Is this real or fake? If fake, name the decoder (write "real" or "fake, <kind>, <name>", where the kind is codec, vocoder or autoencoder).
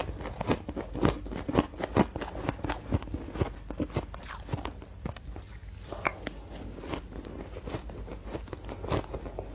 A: real